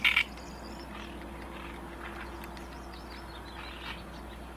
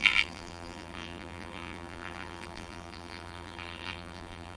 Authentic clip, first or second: first